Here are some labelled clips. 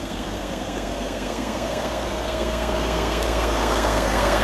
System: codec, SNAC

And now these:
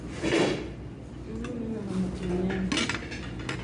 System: none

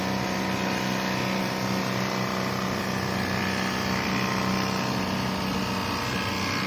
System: none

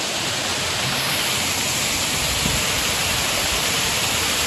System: none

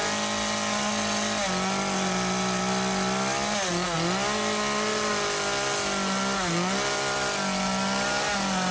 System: none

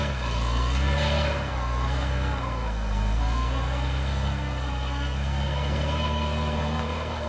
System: codec, SNAC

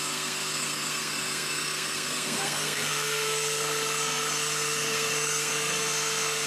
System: codec, SNAC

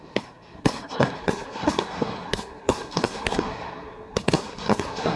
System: codec, SNAC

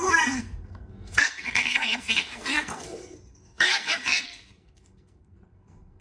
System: codec, SNAC